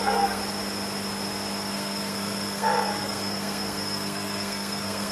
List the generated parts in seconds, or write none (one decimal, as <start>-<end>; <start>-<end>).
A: 0.0-0.4; 1.7-5.1